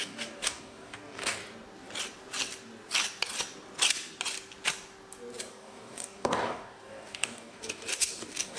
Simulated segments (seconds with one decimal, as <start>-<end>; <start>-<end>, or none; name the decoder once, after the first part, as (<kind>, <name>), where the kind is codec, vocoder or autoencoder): 0.0-1.4 (codec, DAC); 5.5-8.6